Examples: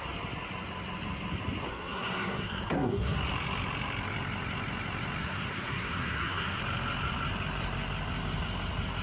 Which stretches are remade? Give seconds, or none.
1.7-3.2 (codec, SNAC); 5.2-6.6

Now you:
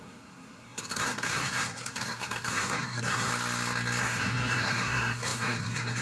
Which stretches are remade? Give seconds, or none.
0.0-3.3 (codec, SNAC); 4.0-6.0

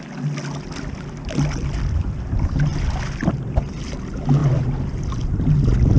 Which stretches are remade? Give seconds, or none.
none

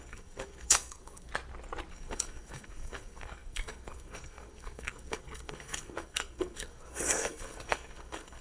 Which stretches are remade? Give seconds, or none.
0.0-1.3 (codec, SNAC); 1.9-8.4

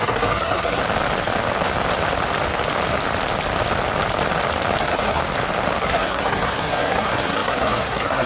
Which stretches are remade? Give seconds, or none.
0.0-0.8 (codec, SNAC); 4.8-5.2; 5.8-8.3

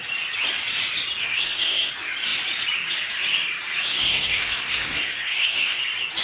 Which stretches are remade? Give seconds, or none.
1.2-1.9 (codec, SNAC); 3.9-5.8